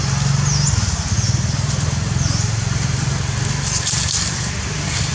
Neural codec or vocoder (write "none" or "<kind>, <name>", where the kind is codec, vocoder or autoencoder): none